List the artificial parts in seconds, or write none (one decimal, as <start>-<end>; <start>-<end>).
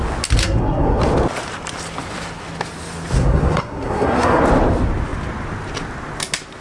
0.4-1.0; 3.2-4.4